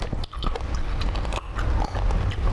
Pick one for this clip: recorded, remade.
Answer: recorded